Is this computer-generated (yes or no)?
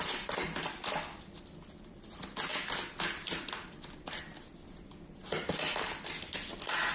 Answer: no